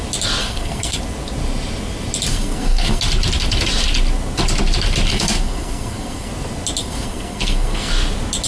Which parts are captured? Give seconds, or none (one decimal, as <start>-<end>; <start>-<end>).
0.0-0.4; 1.0-2.3; 3.0-5.1; 6.3-6.8; 7.9-8.5